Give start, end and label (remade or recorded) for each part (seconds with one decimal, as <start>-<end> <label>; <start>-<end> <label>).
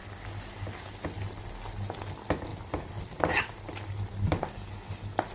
0.0-5.3 recorded